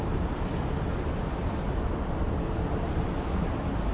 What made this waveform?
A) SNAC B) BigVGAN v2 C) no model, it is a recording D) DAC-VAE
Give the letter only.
B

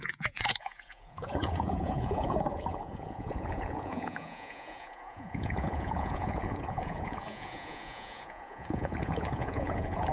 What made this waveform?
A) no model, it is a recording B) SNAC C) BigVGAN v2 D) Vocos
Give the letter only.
D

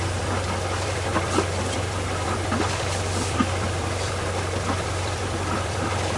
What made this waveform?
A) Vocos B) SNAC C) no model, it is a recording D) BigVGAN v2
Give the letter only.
D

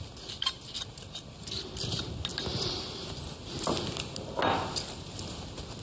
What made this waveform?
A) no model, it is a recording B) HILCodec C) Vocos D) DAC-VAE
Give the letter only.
A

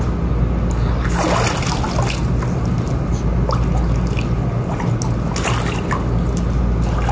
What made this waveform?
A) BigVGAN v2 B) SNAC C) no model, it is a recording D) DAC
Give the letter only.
C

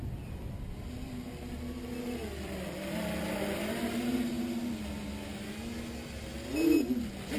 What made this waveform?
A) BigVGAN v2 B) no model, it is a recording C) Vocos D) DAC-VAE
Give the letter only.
B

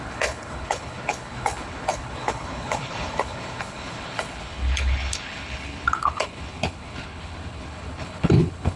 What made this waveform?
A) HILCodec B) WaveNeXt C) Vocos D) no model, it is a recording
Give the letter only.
A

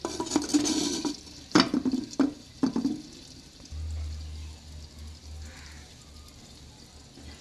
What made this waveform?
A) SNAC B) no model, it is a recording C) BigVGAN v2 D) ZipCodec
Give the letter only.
C